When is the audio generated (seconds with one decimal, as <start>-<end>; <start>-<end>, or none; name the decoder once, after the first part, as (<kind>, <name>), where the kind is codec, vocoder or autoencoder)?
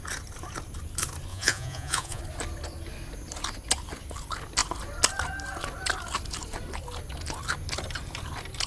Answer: 1.3-2.2 (vocoder, Vocos)